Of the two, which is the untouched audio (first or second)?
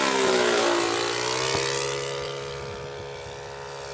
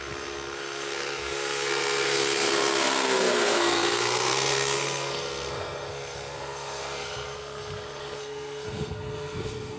first